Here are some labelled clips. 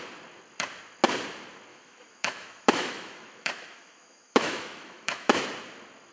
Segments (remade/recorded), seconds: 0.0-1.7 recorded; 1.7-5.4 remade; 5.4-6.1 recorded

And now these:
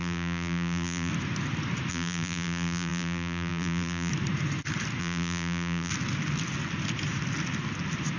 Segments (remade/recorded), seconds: 0.0-1.1 remade; 1.1-1.9 recorded; 1.9-4.1 remade; 4.1-5.0 recorded; 5.0-5.9 remade; 5.9-8.2 recorded

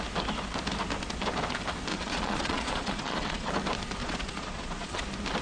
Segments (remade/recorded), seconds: 0.0-1.9 recorded; 1.9-3.5 remade; 3.5-4.0 recorded; 4.0-5.0 remade; 5.0-5.4 recorded

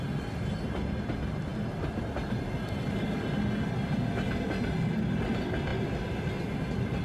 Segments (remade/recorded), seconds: 0.0-7.0 recorded

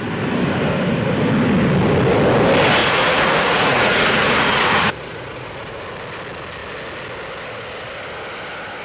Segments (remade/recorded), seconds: 0.0-2.8 recorded; 2.8-5.8 remade; 5.8-8.8 recorded

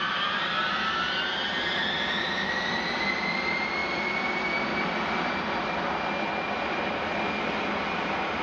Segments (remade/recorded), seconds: 0.0-8.4 recorded

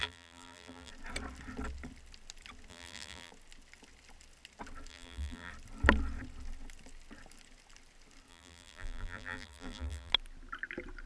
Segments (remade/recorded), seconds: 0.0-0.9 remade; 0.9-2.7 recorded; 2.7-3.3 remade; 3.3-4.9 recorded; 4.9-5.5 remade; 5.5-8.3 recorded; 8.3-10.1 remade; 10.1-11.1 recorded

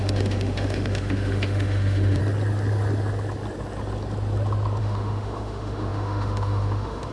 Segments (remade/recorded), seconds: 0.0-2.2 remade; 2.2-4.8 recorded; 4.8-7.1 remade